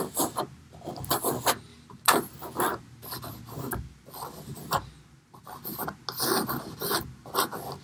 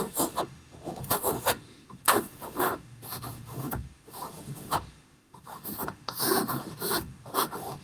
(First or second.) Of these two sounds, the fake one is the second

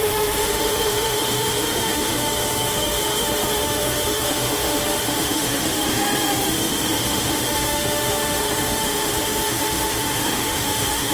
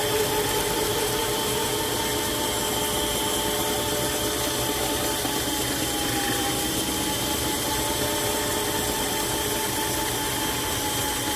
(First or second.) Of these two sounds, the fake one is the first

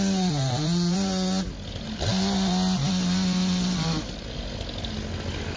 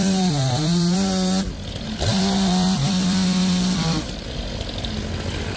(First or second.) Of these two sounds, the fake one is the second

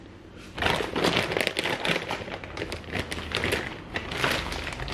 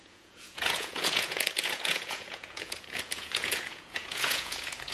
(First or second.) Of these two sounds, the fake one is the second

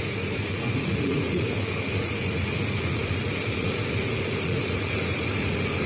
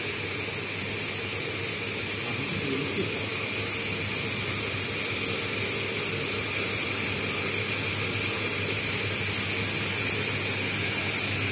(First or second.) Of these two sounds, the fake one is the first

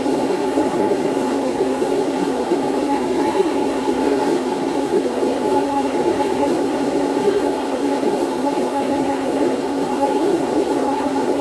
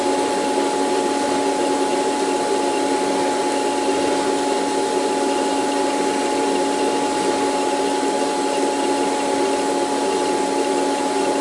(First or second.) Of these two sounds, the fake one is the first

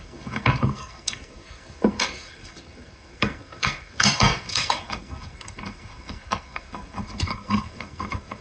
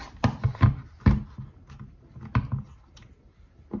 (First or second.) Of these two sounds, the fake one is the first